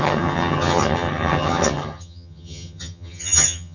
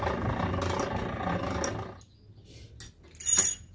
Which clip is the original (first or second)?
second